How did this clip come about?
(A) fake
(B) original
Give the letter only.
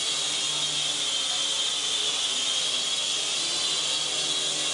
B